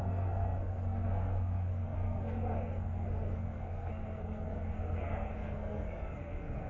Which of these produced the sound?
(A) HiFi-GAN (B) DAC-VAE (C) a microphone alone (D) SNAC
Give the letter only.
D